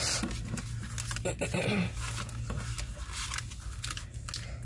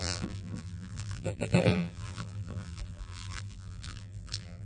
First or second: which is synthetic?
second